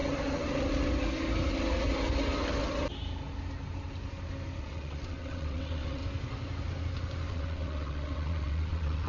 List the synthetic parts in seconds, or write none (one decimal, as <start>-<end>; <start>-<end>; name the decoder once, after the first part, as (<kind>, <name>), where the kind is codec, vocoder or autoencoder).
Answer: 4.6-6.0 (vocoder, WaveNeXt); 7.3-9.1